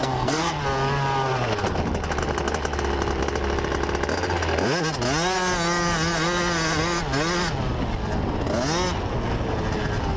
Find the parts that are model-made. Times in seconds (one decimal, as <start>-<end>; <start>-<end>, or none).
0.0-0.6